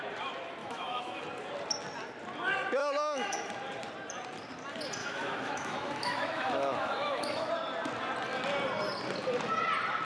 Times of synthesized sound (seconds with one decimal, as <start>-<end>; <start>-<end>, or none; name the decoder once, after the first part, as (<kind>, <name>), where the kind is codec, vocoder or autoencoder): 0.6-1.2 (autoencoder, DAC-VAE); 2.8-3.5; 5.0-7.5